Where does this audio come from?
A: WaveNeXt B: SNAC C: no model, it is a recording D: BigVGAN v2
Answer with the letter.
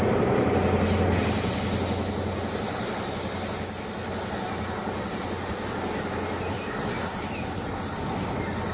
C